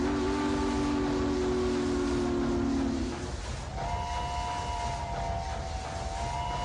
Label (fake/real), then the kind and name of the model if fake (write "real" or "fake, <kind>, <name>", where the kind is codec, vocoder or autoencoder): real